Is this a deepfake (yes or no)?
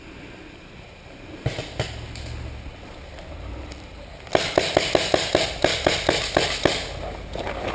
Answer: no